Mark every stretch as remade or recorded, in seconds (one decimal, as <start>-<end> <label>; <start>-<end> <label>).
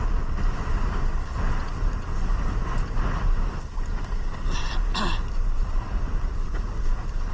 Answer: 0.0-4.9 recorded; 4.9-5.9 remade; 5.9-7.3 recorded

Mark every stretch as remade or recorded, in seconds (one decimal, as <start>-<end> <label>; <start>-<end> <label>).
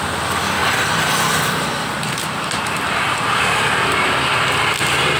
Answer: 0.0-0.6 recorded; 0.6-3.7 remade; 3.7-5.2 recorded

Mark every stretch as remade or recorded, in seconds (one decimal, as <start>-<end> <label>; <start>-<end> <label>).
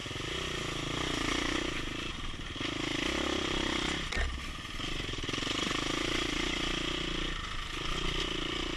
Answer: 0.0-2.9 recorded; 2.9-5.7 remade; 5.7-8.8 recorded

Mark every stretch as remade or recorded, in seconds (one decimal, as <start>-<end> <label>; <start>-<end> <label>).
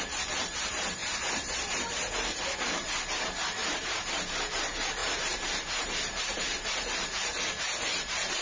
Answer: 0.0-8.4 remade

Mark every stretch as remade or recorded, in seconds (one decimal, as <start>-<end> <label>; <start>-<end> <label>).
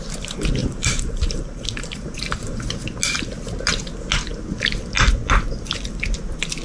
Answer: 0.0-0.6 recorded; 0.6-2.6 remade; 2.6-6.6 recorded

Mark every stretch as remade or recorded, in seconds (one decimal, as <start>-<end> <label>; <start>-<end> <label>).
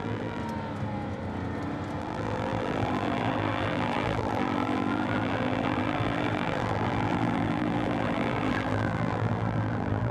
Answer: 0.0-0.4 remade; 0.4-2.0 recorded; 2.0-10.1 remade